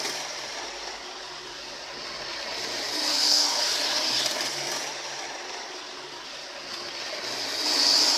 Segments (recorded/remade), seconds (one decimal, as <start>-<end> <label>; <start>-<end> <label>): 0.0-3.1 recorded; 3.1-3.6 remade; 3.6-8.2 recorded